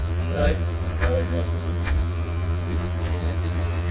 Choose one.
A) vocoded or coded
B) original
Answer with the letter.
A